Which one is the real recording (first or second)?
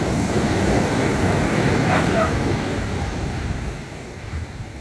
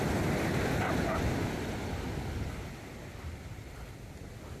second